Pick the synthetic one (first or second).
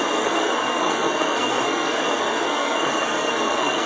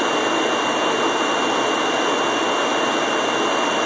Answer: first